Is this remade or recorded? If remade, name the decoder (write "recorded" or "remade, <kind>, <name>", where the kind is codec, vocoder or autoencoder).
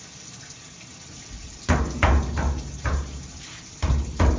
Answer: recorded